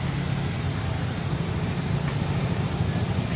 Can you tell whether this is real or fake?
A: real